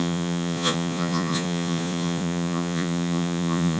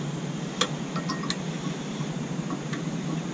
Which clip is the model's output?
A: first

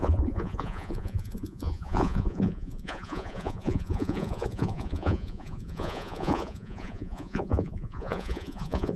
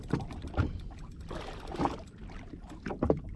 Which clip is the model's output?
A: first